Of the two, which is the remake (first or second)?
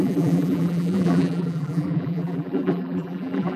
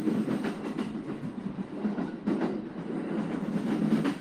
first